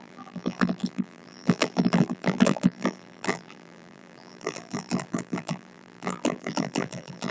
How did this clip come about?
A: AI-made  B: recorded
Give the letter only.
A